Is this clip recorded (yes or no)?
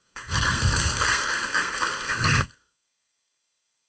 no